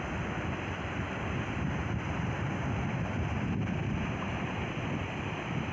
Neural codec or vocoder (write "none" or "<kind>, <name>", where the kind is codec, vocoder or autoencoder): none